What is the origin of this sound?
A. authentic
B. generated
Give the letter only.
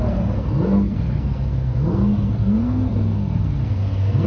B